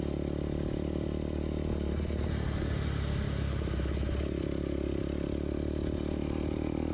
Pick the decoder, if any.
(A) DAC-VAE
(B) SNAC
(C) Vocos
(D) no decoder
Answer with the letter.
D